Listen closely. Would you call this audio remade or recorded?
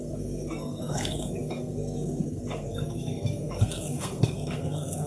remade